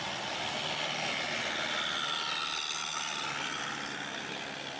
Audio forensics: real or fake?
real